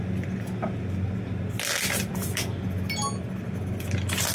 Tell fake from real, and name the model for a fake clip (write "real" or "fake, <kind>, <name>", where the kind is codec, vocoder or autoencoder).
real